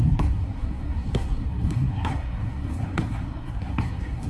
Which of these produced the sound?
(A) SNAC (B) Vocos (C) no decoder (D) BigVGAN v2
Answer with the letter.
A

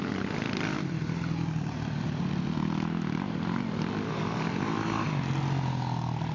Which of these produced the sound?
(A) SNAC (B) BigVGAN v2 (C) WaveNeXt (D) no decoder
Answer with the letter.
D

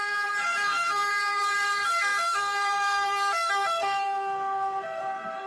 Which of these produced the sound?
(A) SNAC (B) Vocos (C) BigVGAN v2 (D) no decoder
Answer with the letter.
A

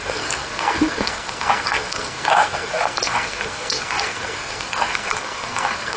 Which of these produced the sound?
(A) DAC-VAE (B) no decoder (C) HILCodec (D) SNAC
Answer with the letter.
D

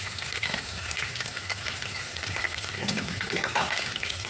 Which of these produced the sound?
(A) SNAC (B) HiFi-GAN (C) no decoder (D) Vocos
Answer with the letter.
A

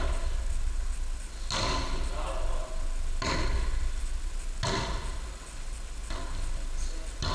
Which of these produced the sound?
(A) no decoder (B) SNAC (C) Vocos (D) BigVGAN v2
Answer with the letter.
A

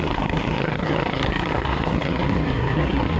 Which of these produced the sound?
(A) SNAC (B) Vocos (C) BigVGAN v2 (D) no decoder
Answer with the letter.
A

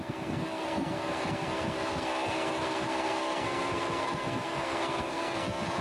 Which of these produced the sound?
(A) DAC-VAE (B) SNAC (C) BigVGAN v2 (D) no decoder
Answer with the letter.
B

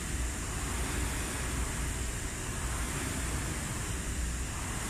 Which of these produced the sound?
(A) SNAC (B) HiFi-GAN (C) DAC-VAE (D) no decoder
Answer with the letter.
D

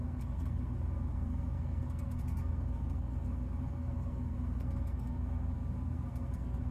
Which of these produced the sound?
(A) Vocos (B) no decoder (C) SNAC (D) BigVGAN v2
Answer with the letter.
C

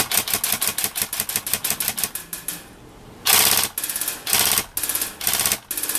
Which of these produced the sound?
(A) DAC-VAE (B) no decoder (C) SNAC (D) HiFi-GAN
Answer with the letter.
B